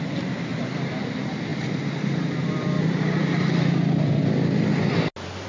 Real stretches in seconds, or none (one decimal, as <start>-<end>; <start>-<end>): 0.0-0.5; 1.1-1.5; 4.2-5.5